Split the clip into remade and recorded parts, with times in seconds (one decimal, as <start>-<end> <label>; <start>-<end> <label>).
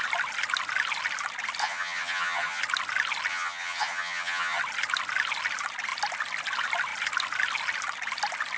0.0-1.6 recorded; 1.6-2.6 remade; 2.6-3.3 recorded; 3.3-4.6 remade; 4.6-8.6 recorded